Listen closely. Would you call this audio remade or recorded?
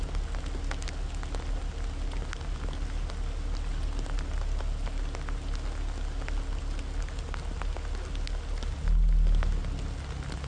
recorded